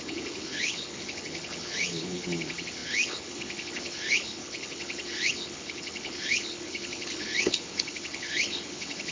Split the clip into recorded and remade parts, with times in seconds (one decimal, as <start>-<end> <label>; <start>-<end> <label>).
0.0-9.1 remade